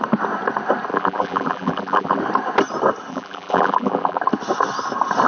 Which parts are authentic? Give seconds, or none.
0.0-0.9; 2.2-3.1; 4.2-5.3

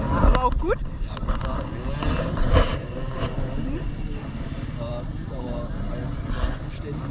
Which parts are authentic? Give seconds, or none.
0.0-0.6; 1.3-2.7; 5.4-7.1

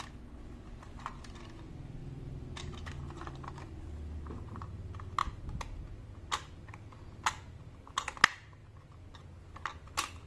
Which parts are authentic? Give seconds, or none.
0.0-2.0; 2.6-10.3

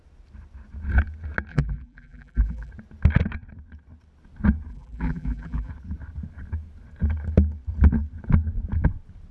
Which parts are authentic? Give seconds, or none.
0.0-1.5; 2.7-4.7; 5.7-9.3

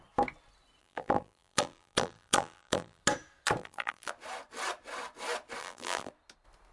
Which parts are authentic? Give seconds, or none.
0.0-0.8; 3.0-3.6; 4.1-5.6; 6.1-6.7

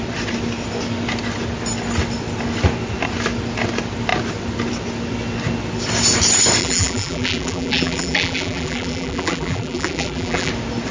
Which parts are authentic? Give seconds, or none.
0.0-6.6; 10.5-10.9

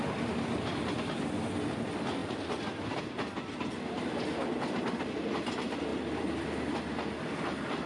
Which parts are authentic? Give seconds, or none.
0.0-7.9

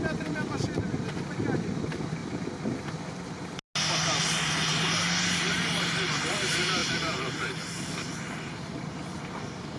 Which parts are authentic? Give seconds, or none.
0.0-9.8